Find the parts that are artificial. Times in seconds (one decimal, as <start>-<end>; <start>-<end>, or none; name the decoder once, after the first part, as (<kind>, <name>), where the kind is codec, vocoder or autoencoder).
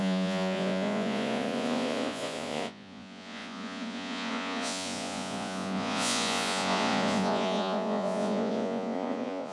0.0-9.5 (vocoder, Vocos)